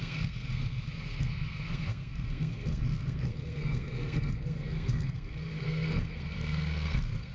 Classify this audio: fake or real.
fake